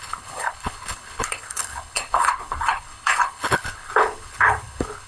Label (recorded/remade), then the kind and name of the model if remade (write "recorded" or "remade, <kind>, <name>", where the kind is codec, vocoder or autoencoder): remade, codec, HILCodec